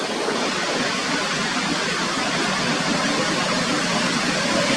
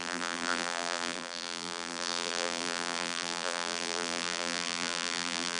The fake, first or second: second